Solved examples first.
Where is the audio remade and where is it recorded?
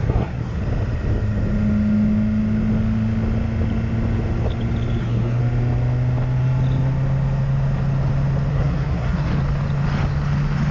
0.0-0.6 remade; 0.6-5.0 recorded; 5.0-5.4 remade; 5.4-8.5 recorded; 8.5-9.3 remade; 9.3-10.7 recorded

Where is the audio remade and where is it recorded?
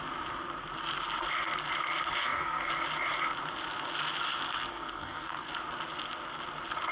0.0-2.2 recorded; 2.2-2.7 remade; 2.7-4.7 recorded; 4.7-5.5 remade; 5.5-6.9 recorded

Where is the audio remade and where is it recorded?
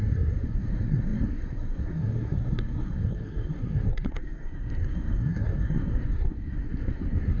0.0-7.4 remade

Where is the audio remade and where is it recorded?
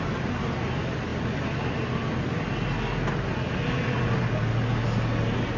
0.0-5.6 recorded